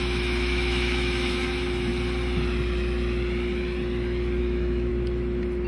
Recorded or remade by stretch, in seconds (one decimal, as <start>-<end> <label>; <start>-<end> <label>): 0.0-1.9 remade; 1.9-4.4 recorded; 4.4-4.9 remade; 4.9-5.7 recorded